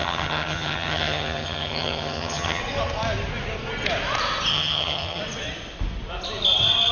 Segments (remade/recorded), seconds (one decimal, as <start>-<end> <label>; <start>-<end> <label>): 0.0-2.6 remade; 2.6-4.5 recorded; 4.5-5.2 remade; 5.2-6.9 recorded